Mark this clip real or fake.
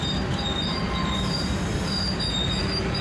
real